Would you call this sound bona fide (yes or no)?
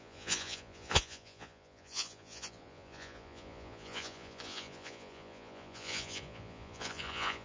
no